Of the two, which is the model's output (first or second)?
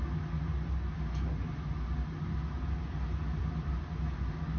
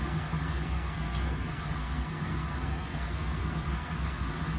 second